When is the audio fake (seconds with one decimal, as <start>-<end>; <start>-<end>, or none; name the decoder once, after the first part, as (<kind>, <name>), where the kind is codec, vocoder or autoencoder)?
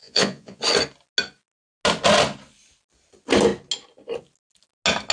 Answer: 0.0-0.6 (vocoder, Vocos)